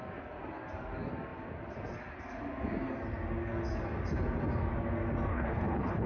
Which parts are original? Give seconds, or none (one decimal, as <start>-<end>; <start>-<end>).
0.0-5.3

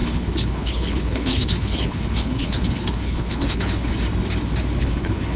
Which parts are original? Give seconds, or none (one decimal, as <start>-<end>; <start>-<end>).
3.9-4.8

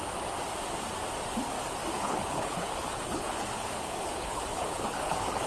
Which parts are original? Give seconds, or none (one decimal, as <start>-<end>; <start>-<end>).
0.0-2.0

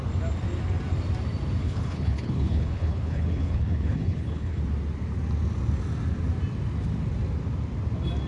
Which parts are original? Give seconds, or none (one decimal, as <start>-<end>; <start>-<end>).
0.0-1.6; 4.6-8.3